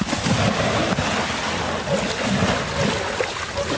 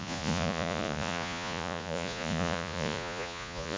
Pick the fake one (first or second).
second